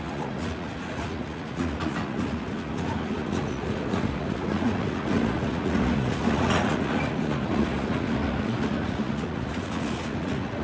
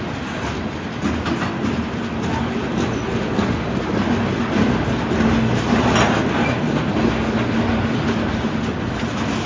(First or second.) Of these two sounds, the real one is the second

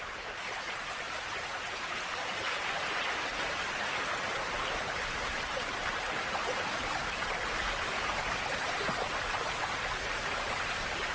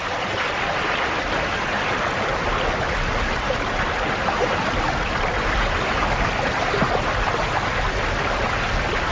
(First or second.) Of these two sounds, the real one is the second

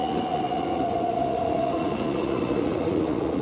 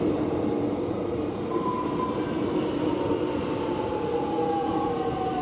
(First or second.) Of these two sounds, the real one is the second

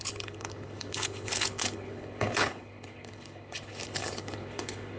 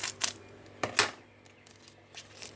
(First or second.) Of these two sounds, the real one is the second